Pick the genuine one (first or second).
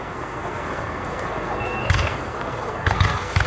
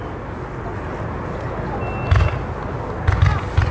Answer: second